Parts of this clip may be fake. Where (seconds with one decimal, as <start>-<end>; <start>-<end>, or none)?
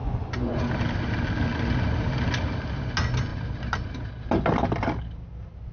0.0-0.6